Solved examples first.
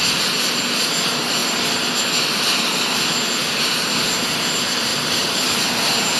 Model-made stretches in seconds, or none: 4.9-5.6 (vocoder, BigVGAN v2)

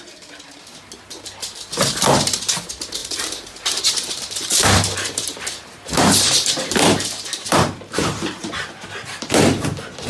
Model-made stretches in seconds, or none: 3.0-3.8 (vocoder, BigVGAN v2); 4.5-8.5

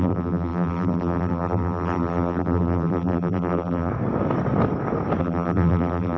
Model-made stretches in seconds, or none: 0.0-3.9 (vocoder, BigVGAN v2); 5.2-6.2

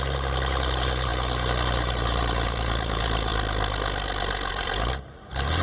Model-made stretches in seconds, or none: 0.0-3.3 (vocoder, BigVGAN v2); 4.5-5.6

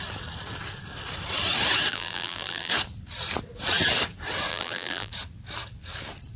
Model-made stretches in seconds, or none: 1.9-2.7 (vocoder, BigVGAN v2); 4.5-5.1